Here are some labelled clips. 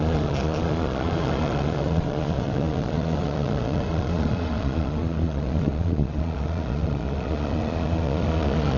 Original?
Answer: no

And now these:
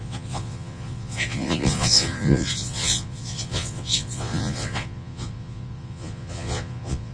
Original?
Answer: no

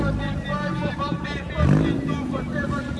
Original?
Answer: yes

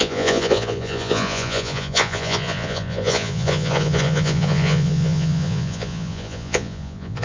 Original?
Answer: no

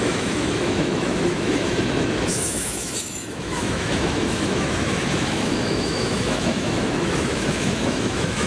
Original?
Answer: no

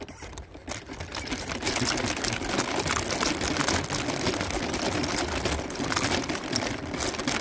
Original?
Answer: yes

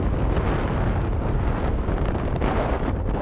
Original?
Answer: yes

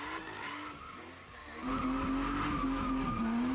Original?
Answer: yes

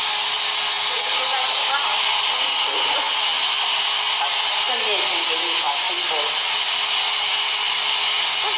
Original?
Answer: yes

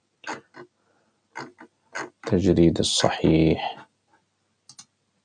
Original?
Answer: yes